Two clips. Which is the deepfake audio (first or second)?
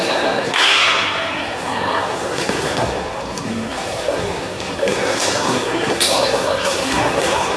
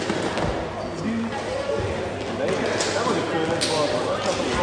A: first